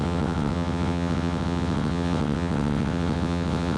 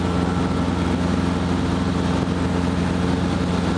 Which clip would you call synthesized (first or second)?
first